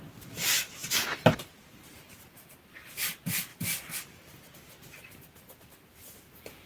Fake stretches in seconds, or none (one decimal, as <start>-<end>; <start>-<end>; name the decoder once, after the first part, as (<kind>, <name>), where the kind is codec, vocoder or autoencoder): 0.8-2.1 (vocoder, BigVGAN v2)